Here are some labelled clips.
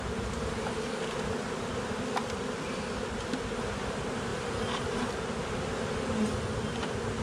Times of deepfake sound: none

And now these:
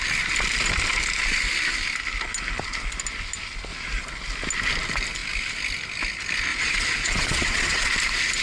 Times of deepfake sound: 6.5-7.9 (vocoder, Vocos)

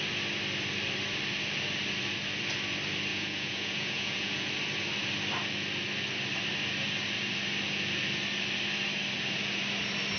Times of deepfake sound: 3.1-4.5 (vocoder, Vocos)

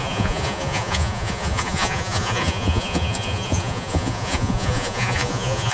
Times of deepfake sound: 0.0-5.7 (vocoder, Vocos)